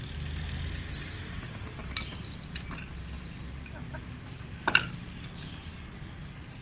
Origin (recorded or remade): recorded